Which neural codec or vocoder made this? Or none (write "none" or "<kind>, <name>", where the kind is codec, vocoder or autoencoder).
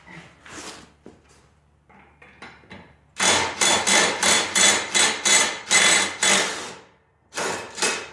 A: none